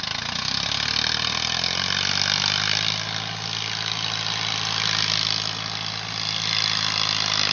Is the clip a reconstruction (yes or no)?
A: no